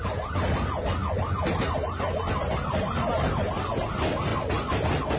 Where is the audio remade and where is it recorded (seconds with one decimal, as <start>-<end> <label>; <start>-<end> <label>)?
0.0-5.2 recorded